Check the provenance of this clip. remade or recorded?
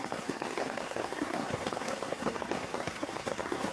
remade